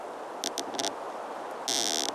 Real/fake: real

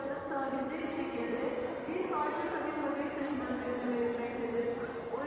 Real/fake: real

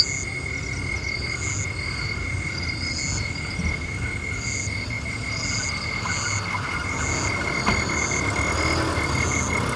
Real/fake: real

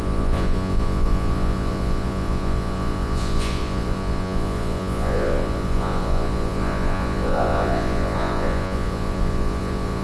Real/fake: fake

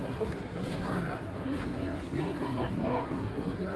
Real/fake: fake